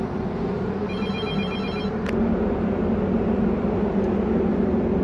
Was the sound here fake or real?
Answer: real